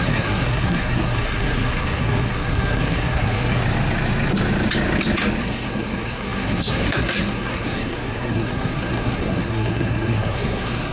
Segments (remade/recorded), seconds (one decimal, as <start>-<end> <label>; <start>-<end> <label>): 0.0-3.6 remade; 3.6-5.4 recorded; 5.4-10.9 remade

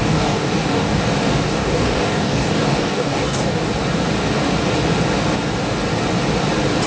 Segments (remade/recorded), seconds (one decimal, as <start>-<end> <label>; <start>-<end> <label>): 0.0-1.0 remade; 1.0-1.5 recorded; 1.5-3.7 remade; 3.7-6.9 recorded

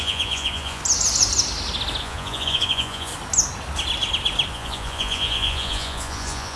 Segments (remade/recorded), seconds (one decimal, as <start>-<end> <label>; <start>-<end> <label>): 0.0-0.8 remade; 0.8-2.0 recorded; 2.0-3.1 remade; 3.1-4.5 recorded; 4.5-6.6 remade

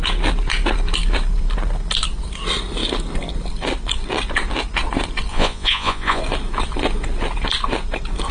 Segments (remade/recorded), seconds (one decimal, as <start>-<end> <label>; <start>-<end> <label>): 0.0-5.3 recorded; 5.3-6.2 remade; 6.2-8.3 recorded